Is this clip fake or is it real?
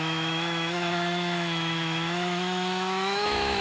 fake